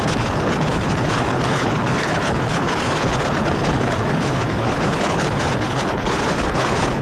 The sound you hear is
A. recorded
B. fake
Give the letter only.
B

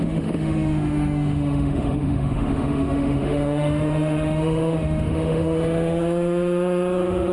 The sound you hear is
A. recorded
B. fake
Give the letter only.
B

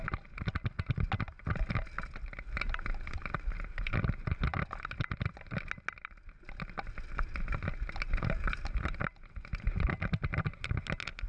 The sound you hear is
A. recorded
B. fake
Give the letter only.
A